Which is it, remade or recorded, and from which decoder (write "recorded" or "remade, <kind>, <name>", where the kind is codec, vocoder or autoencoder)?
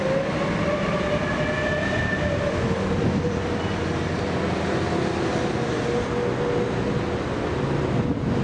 recorded